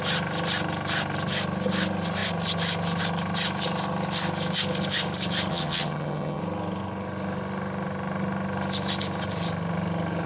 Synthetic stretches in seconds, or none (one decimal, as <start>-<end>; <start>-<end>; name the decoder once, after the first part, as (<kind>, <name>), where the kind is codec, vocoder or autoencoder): 5.5-6.4 (vocoder, HiFi-GAN)